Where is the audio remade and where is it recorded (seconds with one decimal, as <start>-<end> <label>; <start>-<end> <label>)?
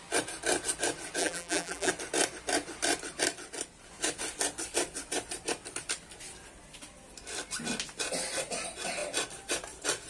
0.0-1.2 recorded; 1.2-1.9 remade; 1.9-10.1 recorded